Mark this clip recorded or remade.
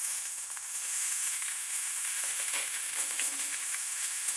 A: remade